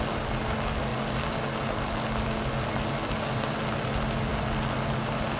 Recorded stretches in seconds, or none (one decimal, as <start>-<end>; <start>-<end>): 0.0-5.4